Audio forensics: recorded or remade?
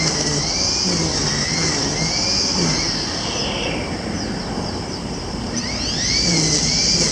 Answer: recorded